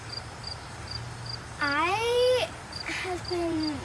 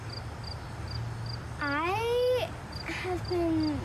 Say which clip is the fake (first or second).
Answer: first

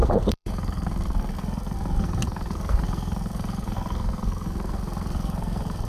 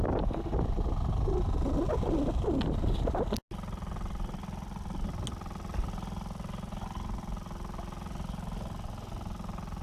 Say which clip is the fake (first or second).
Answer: first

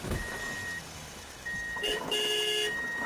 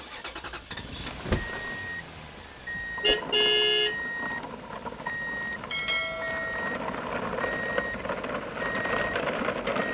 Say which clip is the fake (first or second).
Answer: first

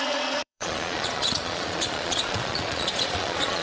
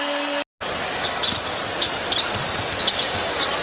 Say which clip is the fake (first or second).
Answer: first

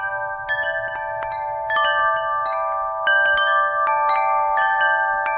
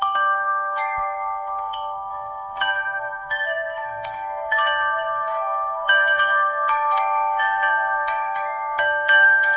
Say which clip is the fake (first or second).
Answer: second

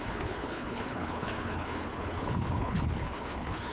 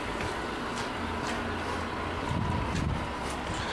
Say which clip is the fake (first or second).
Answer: first